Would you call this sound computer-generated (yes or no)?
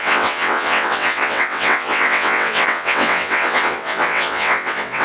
yes